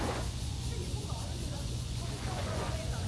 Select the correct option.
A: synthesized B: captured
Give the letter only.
A